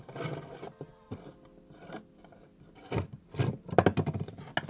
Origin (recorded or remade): recorded